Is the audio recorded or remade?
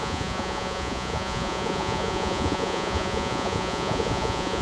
remade